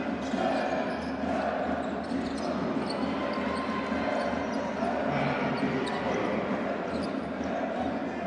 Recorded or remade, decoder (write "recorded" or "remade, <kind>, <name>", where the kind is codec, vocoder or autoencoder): recorded